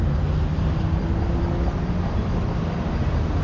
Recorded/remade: recorded